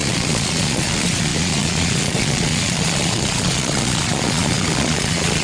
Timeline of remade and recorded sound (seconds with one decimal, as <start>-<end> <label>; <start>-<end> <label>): 0.0-5.4 remade